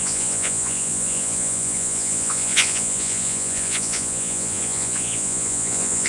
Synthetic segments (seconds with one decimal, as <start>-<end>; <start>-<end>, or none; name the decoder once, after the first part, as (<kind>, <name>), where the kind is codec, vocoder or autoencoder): 0.0-6.1 (vocoder, Vocos)